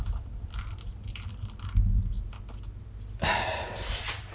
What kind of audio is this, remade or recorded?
recorded